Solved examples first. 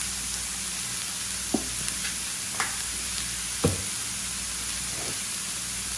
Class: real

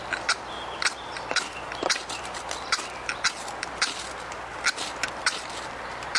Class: real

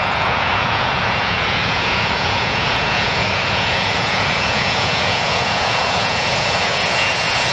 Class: fake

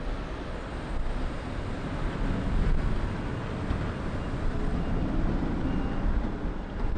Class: real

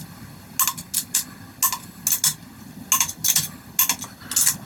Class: real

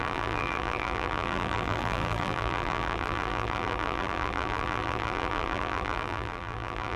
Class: fake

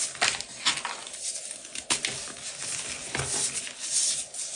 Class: real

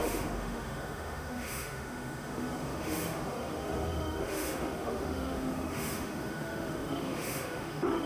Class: fake